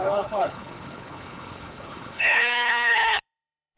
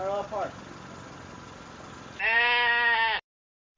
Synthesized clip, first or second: first